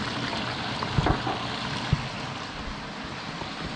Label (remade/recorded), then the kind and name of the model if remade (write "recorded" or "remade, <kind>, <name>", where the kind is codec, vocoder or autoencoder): remade, vocoder, BigVGAN v2